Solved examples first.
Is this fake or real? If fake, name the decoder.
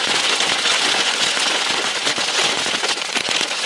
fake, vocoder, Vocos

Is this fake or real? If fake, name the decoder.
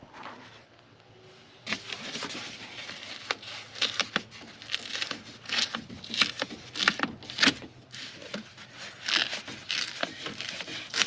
real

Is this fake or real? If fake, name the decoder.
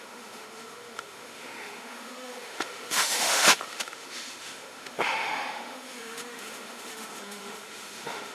fake, autoencoder, DAC-VAE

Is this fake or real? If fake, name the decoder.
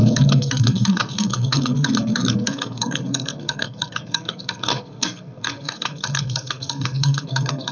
fake, codec, SNAC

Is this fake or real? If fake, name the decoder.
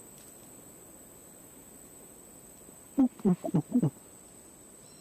real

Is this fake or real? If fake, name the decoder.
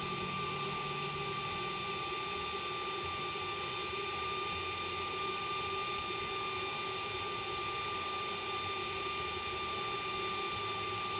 real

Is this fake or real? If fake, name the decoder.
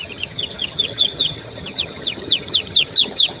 fake, vocoder, HiFi-GAN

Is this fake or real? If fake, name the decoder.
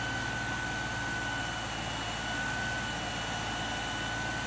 real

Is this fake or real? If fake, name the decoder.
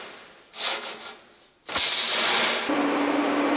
real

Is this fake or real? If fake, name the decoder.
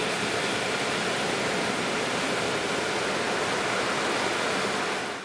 real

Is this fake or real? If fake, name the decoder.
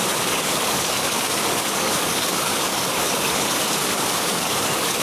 fake, codec, DAC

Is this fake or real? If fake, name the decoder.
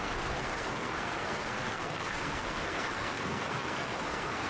fake, codec, SNAC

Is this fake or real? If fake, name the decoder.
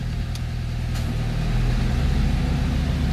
real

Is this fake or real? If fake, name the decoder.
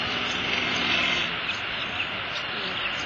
fake, vocoder, BigVGAN v2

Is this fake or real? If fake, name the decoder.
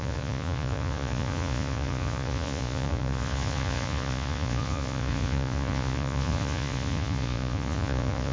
fake, vocoder, Vocos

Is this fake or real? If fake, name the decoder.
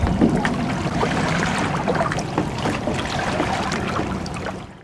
fake, vocoder, BigVGAN v2